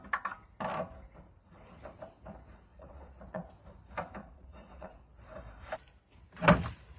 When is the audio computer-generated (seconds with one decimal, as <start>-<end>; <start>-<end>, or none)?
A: 2.7-3.5; 4.2-5.1